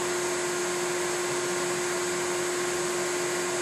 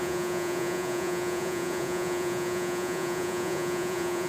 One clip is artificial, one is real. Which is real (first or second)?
first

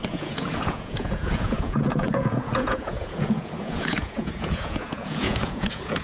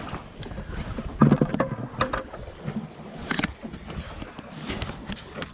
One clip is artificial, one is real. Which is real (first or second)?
second